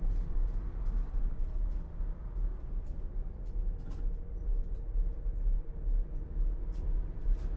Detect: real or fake real